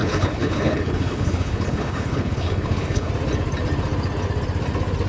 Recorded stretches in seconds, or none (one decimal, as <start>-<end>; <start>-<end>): 3.1-5.1

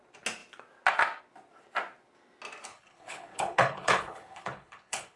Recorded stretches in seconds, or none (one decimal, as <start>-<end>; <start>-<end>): 0.0-2.7

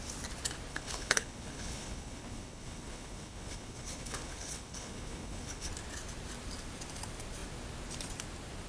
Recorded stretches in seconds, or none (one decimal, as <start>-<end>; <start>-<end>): 0.0-0.7; 5.7-8.7

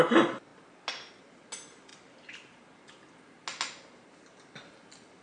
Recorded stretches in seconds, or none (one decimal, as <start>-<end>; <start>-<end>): 0.0-5.2

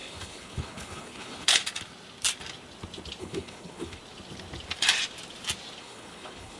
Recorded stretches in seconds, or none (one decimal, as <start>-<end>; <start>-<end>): 1.6-3.2; 4.0-5.8

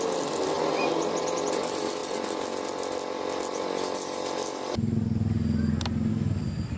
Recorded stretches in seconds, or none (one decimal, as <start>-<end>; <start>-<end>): 0.0-6.8

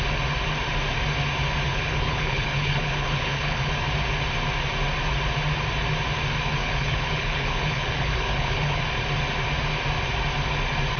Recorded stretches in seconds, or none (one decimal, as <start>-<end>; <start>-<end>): 0.0-1.7; 3.7-6.6; 8.8-11.0

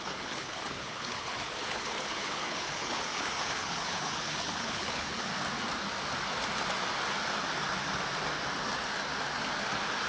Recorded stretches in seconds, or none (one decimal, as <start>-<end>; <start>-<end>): 5.3-10.1